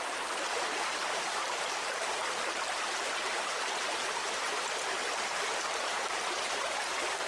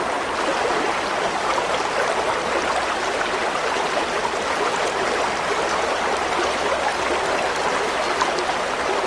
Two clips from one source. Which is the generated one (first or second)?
first